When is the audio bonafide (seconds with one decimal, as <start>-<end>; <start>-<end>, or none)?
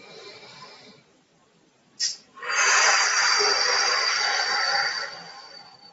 1.3-4.5